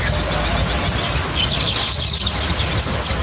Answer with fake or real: real